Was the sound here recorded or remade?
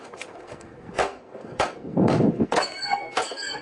remade